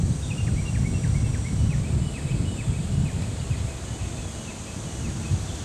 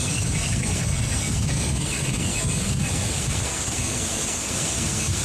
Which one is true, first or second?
first